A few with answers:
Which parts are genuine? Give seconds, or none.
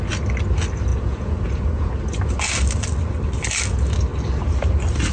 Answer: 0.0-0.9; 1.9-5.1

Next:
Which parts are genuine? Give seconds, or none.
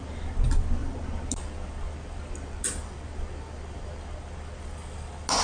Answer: 0.0-5.4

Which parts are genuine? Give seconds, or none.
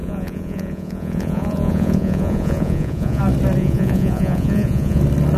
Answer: 3.2-3.6; 5.0-5.4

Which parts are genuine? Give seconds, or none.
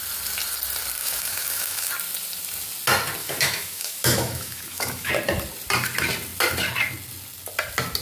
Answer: 0.0-1.0; 1.9-3.2; 5.1-8.0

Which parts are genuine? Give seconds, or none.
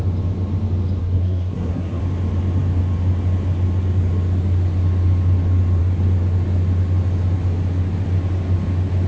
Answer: 0.0-1.0; 2.0-9.1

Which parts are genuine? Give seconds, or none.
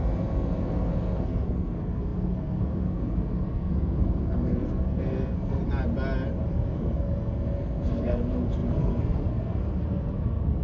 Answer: 5.6-6.4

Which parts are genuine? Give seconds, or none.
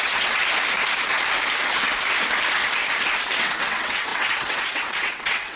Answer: 0.4-3.4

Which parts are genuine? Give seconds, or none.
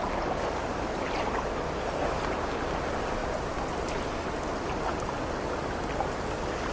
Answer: 0.0-6.7